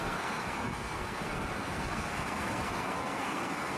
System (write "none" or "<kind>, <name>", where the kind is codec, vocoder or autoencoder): codec, SNAC